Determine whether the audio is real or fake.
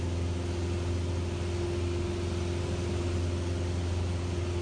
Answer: real